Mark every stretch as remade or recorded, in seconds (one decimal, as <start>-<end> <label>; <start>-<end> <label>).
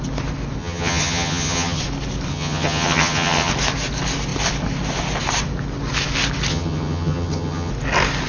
0.0-0.6 recorded; 0.6-1.8 remade; 1.8-2.3 recorded; 2.3-3.5 remade; 3.5-6.5 recorded; 6.5-7.7 remade; 7.7-8.3 recorded